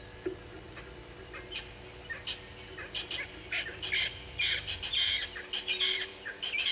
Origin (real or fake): real